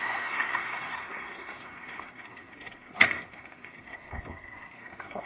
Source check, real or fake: fake